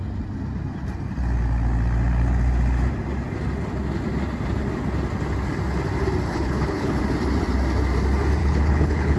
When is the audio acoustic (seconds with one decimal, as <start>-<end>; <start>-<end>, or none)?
0.0-6.3; 7.0-8.4